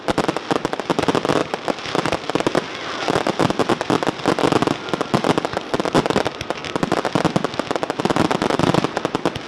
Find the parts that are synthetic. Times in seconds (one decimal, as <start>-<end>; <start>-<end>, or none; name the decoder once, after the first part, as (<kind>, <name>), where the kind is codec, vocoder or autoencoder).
none